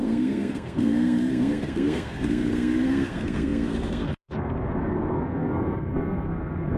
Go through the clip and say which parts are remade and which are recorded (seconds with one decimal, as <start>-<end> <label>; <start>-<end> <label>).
0.0-6.8 remade